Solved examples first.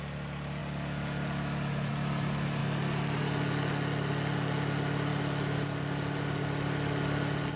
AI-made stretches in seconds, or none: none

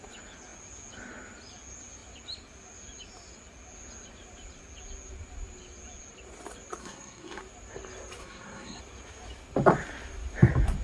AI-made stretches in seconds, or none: 6.8-7.4 (codec, SNAC); 8.2-8.8